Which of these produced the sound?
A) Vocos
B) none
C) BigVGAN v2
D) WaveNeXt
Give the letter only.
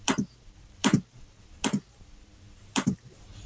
C